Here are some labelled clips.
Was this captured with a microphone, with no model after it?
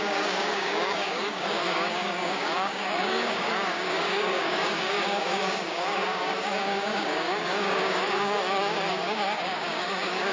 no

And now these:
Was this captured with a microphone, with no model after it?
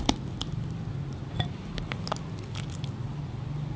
yes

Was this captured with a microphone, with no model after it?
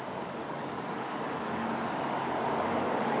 no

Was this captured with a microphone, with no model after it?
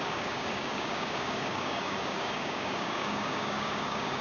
no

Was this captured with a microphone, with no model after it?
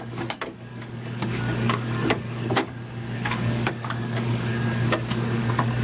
no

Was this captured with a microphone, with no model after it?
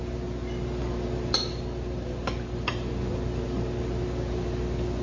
yes